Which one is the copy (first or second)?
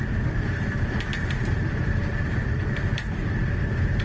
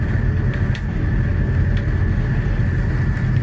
first